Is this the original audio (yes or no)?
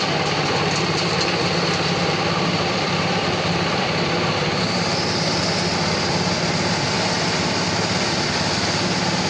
no